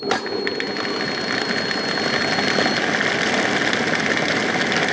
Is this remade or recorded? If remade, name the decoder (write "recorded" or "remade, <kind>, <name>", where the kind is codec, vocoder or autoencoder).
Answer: recorded